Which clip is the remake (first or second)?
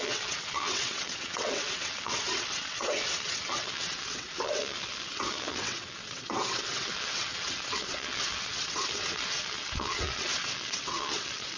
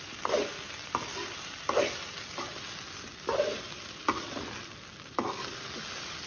first